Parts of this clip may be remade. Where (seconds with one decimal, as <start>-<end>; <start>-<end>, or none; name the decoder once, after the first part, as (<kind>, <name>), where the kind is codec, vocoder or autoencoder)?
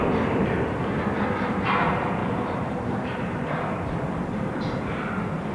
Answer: 2.2-3.6 (vocoder, BigVGAN v2)